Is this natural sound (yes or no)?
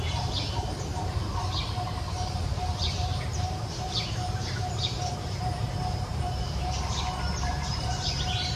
no